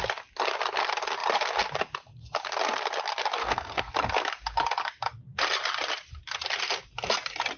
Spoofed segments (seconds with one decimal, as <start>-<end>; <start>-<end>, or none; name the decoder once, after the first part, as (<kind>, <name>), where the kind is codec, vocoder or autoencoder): 3.2-3.9 (codec, SNAC)

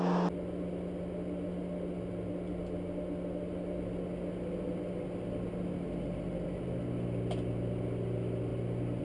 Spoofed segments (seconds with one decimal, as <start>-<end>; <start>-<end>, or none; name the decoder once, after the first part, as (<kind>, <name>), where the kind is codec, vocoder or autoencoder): none

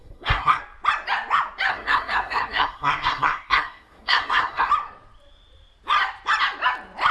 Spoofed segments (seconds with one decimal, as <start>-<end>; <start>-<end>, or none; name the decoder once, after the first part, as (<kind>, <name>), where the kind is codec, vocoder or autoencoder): 0.0-0.6 (codec, SNAC); 1.7-4.7

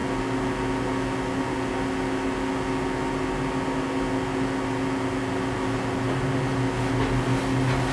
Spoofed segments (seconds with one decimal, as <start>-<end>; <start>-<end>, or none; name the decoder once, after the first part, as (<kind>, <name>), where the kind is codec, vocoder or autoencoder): none

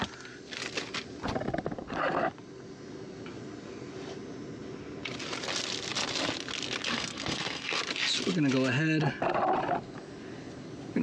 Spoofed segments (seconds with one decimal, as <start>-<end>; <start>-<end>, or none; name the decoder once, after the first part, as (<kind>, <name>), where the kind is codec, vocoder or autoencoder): 6.9-7.8 (codec, SNAC)